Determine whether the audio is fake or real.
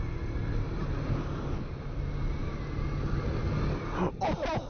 real